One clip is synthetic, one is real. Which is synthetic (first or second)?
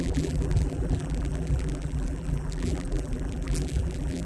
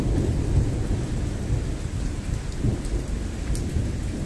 first